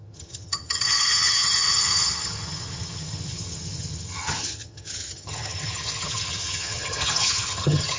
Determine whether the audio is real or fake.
fake